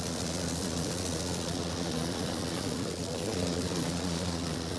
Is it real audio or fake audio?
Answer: fake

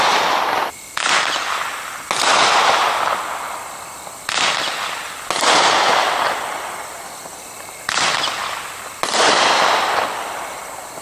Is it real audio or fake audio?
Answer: real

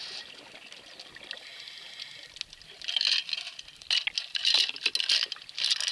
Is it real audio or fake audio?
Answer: real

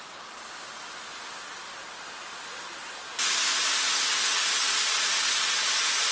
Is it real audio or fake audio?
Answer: real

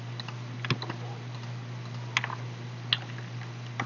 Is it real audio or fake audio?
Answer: real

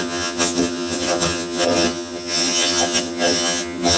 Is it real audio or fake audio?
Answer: fake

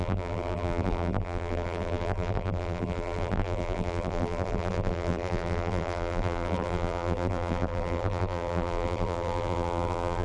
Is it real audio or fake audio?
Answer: fake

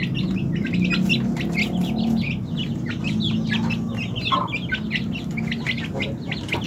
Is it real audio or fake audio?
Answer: real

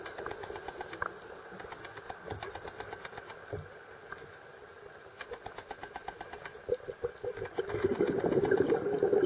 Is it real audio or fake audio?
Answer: real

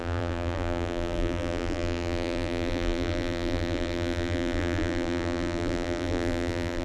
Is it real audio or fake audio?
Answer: fake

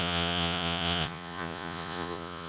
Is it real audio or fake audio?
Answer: fake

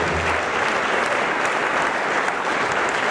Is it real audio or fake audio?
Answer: real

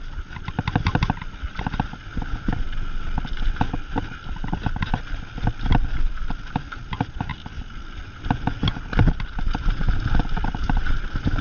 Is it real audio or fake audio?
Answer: real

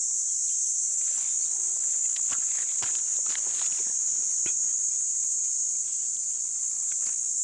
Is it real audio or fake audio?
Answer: real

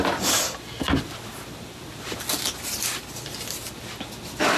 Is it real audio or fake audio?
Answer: real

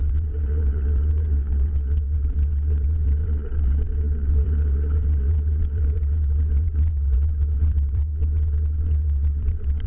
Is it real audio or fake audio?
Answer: fake